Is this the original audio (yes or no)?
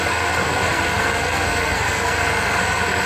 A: no